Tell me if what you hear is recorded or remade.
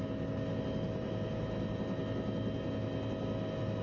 recorded